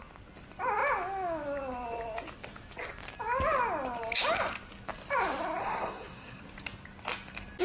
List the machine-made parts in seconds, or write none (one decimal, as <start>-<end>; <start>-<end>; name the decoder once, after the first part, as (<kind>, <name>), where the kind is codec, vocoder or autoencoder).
5.6-6.4 (codec, SNAC)